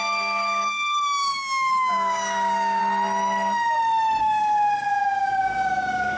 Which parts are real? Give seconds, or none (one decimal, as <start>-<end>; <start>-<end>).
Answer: 2.8-4.2